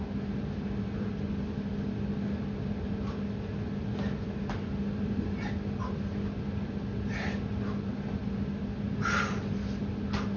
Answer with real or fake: real